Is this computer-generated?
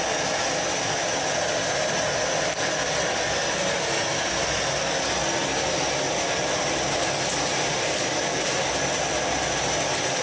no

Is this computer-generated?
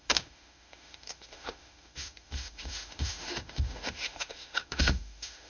yes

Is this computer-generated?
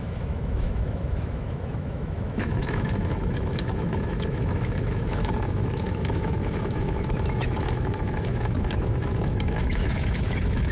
yes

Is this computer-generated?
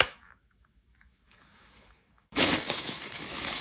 yes